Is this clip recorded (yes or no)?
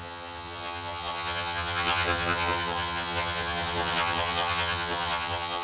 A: no